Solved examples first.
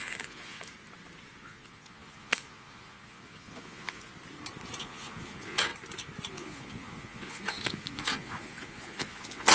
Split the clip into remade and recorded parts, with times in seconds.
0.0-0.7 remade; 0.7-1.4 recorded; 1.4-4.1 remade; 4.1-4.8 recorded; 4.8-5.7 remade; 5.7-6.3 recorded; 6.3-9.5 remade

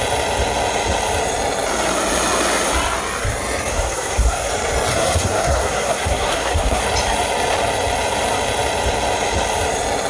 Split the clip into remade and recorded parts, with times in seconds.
0.0-3.7 recorded; 3.7-4.5 remade; 4.5-4.9 recorded; 4.9-6.8 remade; 6.8-10.1 recorded

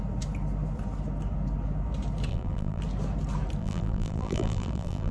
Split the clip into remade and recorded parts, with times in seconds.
0.0-2.3 recorded; 2.3-2.8 remade; 2.8-3.6 recorded; 3.6-5.1 remade